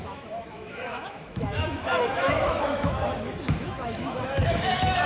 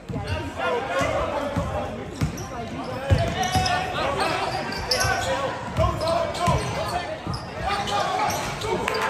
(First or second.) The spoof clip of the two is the first